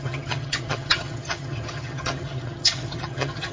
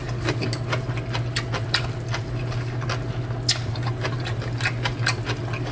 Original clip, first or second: second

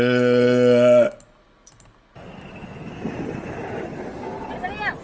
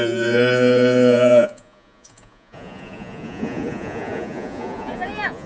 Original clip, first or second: first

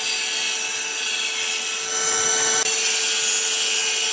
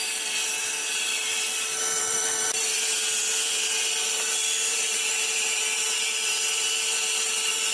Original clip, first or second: first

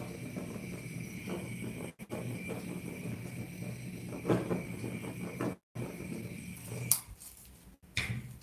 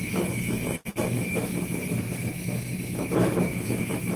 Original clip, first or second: first